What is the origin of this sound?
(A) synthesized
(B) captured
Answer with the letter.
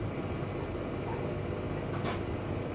B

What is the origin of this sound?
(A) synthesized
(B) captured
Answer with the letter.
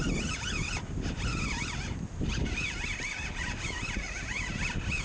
B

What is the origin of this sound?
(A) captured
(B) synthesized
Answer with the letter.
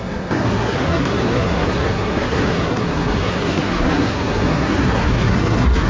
B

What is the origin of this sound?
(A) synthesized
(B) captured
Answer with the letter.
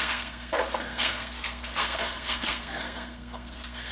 A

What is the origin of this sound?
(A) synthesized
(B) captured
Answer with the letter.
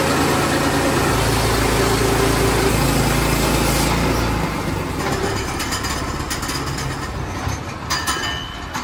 B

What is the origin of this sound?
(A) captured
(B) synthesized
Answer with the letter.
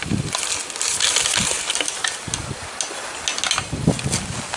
A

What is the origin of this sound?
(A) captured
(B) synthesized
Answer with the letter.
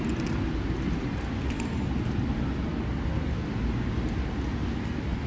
A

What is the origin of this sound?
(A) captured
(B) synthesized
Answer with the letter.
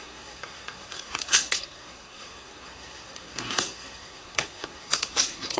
B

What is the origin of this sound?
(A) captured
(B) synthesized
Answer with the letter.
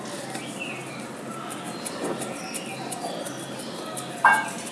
A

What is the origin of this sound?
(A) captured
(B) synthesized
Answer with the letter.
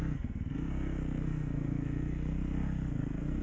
B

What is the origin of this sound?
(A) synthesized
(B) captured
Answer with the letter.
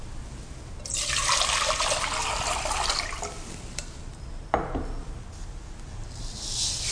B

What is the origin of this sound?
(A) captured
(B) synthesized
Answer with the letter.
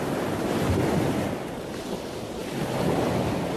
A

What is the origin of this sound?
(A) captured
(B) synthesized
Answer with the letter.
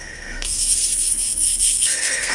B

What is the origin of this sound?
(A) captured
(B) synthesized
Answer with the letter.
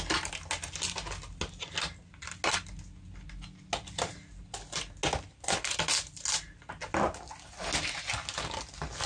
A